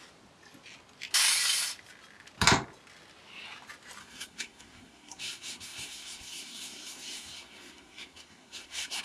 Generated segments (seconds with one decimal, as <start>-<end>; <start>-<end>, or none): 4.0-9.0